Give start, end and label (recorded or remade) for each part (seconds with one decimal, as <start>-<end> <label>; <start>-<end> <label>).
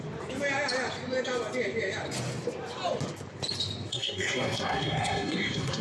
0.0-3.9 recorded; 3.9-5.8 remade